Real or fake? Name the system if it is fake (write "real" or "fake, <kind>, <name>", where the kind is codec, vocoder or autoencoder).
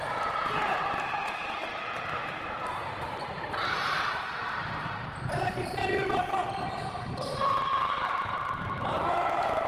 fake, vocoder, BigVGAN v2